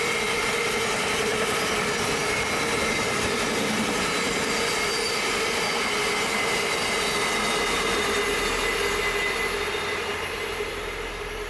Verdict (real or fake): real